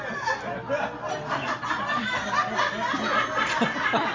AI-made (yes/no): no